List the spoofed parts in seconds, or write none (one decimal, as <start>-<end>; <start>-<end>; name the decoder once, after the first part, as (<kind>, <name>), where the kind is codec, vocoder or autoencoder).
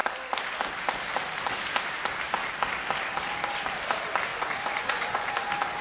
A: 4.3-5.3 (vocoder, Vocos)